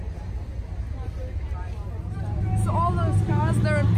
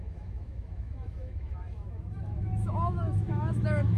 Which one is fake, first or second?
second